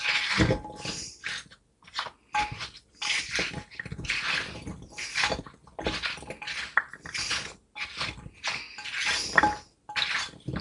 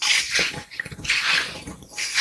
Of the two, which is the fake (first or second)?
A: second